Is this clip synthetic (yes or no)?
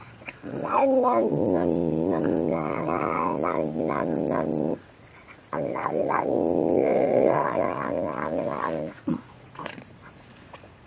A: yes